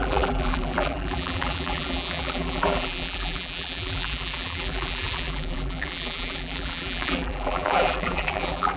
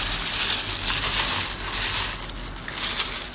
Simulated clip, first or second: first